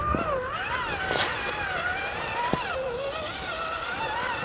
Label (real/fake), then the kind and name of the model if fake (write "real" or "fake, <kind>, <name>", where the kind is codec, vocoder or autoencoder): real